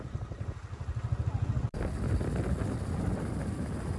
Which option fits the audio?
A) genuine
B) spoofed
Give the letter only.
A